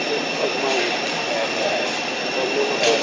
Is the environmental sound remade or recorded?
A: recorded